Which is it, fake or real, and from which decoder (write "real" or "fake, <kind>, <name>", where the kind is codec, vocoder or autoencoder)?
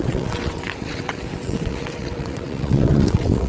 fake, vocoder, WaveNeXt